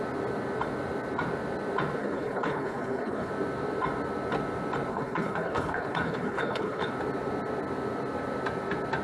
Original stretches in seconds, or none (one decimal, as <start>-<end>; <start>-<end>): 0.0-2.0; 3.3-4.9; 6.9-9.0